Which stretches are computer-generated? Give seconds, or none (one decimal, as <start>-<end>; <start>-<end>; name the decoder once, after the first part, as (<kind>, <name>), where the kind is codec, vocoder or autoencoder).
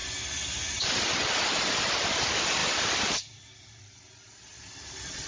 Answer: 2.6-3.9 (vocoder, BigVGAN v2)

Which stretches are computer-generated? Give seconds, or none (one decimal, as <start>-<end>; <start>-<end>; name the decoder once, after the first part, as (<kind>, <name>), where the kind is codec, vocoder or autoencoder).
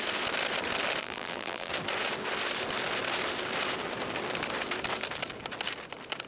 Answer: 1.0-1.7 (vocoder, BigVGAN v2)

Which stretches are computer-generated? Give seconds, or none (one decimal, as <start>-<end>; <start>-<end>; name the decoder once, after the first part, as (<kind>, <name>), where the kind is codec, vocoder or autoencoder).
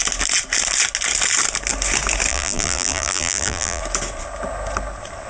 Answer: 2.3-3.8 (vocoder, BigVGAN v2)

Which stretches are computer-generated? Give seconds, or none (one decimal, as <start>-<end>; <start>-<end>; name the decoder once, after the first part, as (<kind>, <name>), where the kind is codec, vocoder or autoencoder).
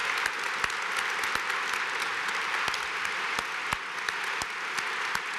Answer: none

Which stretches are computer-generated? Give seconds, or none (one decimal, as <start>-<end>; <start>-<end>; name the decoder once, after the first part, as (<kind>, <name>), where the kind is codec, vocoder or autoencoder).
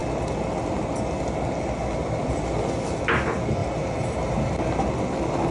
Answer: 3.6-4.8 (vocoder, BigVGAN v2)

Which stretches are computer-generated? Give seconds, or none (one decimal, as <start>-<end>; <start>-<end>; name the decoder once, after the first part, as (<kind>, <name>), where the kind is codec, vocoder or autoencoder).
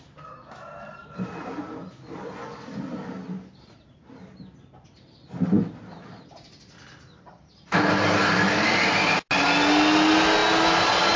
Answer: none